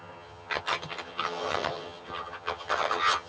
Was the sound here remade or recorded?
remade